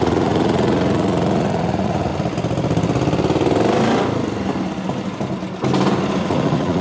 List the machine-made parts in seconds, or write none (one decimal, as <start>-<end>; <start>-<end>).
0.0-2.1; 6.2-6.8